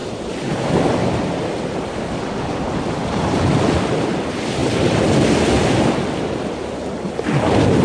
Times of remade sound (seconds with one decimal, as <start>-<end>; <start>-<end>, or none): 0.0-0.7